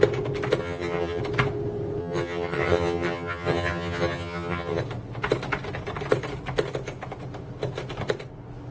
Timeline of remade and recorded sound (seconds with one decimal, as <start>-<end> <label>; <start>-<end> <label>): 0.0-0.6 recorded; 0.6-1.2 remade; 1.2-2.0 recorded; 2.0-4.8 remade; 4.8-8.7 recorded